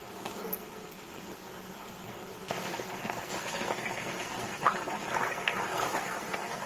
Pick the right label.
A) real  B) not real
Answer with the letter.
B